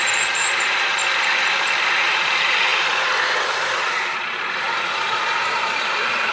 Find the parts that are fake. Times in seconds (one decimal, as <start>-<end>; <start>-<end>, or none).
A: 0.0-1.0; 2.0-6.3

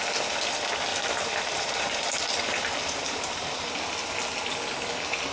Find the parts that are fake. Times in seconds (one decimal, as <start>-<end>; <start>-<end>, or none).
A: 0.9-3.7